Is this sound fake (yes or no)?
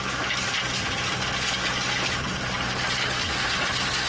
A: no